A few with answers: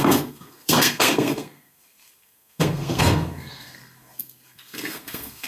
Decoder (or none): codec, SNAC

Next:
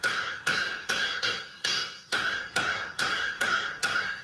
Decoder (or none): codec, SNAC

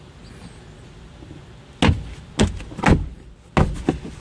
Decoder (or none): none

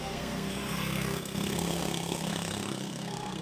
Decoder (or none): codec, SNAC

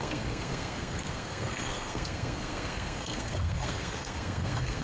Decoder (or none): codec, SNAC